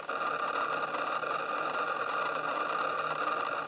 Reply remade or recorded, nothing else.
recorded